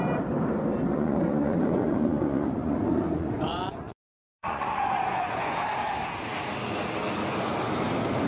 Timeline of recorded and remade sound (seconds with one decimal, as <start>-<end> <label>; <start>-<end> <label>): 0.0-0.9 recorded; 0.9-5.6 remade; 5.6-8.3 recorded